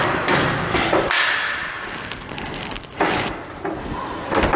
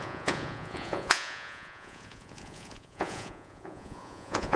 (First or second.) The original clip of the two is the first